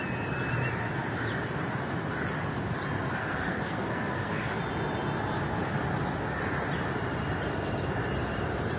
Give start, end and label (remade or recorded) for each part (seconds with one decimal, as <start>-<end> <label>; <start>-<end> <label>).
0.0-3.2 recorded; 3.2-4.6 remade; 4.6-8.8 recorded